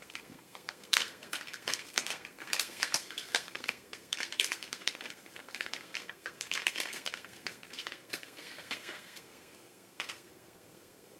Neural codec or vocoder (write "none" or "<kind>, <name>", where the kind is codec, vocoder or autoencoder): codec, SNAC